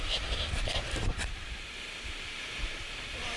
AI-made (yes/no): yes